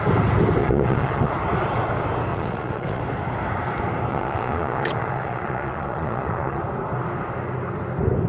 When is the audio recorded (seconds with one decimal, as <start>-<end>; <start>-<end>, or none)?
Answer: 0.0-0.6; 1.3-2.3; 3.0-4.1; 6.6-8.3